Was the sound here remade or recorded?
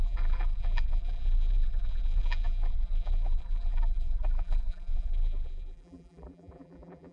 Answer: remade